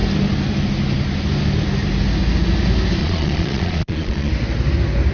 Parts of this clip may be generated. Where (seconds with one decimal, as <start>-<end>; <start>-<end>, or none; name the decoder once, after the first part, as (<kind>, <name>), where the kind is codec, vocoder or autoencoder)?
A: 3.0-4.3 (vocoder, Vocos)